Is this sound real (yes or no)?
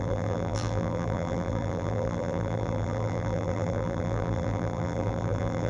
no